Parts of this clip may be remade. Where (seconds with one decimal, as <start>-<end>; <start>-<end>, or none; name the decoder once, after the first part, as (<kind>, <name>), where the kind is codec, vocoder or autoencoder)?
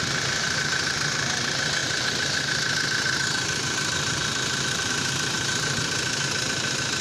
none